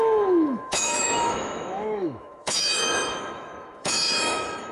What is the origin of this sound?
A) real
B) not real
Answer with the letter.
B